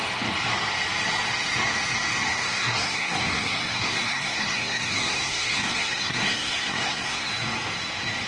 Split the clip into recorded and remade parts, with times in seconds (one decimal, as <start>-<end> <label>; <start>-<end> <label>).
0.0-2.3 recorded; 2.3-7.3 remade; 7.3-8.3 recorded